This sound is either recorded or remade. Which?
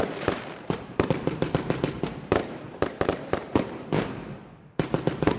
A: remade